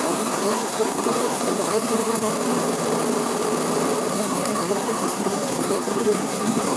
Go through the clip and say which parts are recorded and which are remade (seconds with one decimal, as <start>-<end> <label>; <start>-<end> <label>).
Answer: 0.0-2.3 remade; 2.3-4.1 recorded; 4.1-6.8 remade